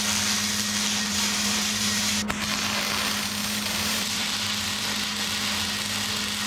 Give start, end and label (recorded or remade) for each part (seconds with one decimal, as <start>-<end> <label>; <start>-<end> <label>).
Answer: 0.0-1.1 recorded; 1.1-2.3 remade; 2.3-3.4 recorded; 3.4-4.2 remade; 4.2-6.5 recorded